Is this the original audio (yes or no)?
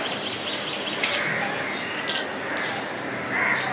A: yes